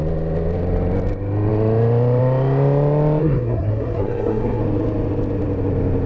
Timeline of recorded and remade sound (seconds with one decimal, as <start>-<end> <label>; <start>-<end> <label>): 0.0-3.2 recorded; 3.2-4.6 remade; 4.6-6.1 recorded